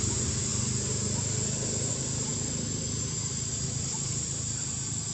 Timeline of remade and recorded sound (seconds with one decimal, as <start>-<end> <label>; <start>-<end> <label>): 0.0-5.1 recorded